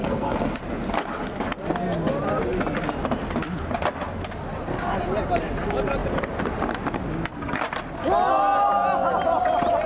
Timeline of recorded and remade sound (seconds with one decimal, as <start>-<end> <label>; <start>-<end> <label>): 0.0-0.6 remade; 0.6-9.9 recorded